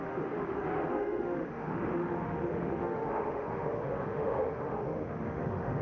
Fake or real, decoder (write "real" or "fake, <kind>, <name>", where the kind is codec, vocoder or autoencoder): fake, autoencoder, DAC-VAE